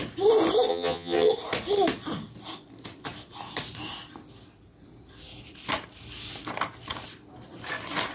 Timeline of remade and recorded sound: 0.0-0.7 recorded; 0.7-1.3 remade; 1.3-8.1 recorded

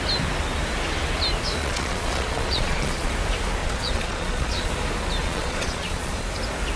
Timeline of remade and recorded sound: 0.0-1.6 recorded; 1.6-3.1 remade; 3.1-3.6 recorded; 3.6-4.7 remade; 4.7-5.2 recorded; 5.2-6.2 remade; 6.2-6.8 recorded